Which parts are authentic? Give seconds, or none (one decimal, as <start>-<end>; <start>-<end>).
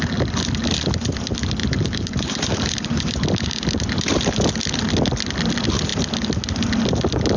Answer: 0.0-1.6; 4.1-7.4